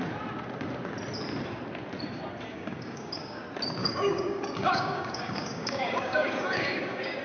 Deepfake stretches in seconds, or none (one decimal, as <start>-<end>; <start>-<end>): 2.5-3.4; 3.8-7.2